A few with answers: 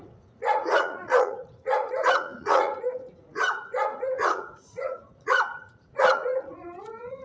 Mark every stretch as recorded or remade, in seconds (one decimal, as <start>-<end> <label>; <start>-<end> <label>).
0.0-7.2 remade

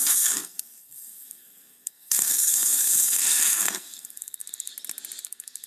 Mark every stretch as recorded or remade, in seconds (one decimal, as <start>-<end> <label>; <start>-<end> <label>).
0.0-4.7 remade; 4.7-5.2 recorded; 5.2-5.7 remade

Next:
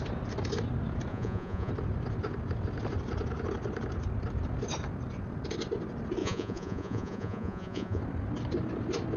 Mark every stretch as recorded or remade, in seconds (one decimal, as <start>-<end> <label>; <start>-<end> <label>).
0.0-1.1 recorded; 1.1-1.7 remade; 1.7-6.2 recorded; 6.2-8.0 remade; 8.0-9.2 recorded

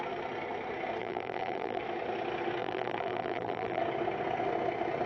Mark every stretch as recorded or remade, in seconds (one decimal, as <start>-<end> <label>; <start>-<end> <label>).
0.0-1.0 recorded; 1.0-1.8 remade; 1.8-2.6 recorded; 2.6-3.8 remade; 3.8-5.1 recorded